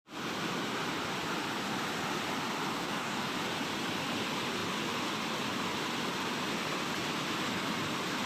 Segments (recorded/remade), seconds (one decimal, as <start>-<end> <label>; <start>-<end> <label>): 0.0-2.7 recorded; 2.7-3.3 remade; 3.3-8.3 recorded